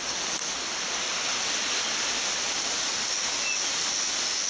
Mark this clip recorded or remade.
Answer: recorded